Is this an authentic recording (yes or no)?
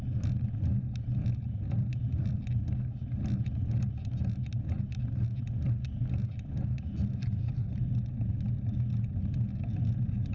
yes